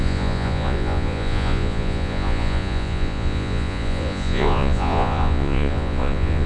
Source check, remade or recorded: remade